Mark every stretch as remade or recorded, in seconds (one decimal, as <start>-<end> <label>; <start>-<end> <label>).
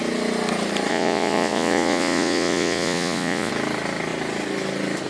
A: 0.0-0.9 recorded; 0.9-3.5 remade; 3.5-5.1 recorded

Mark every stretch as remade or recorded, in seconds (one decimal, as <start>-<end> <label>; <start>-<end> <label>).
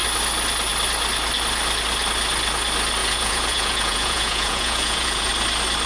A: 0.0-3.0 recorded; 3.0-5.3 remade; 5.3-5.9 recorded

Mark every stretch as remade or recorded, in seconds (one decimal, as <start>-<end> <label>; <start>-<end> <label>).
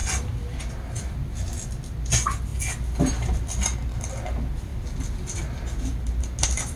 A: 0.0-6.8 recorded